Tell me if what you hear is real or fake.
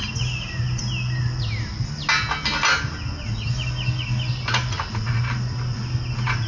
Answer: real